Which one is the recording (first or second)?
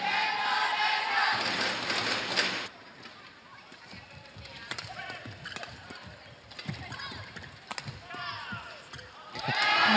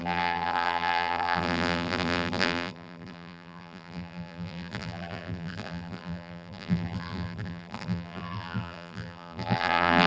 first